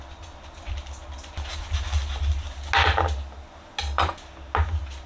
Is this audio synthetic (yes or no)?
no